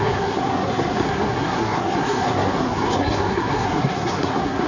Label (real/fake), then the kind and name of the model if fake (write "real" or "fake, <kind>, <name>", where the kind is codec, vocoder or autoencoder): fake, codec, SNAC